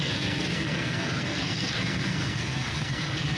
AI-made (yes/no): yes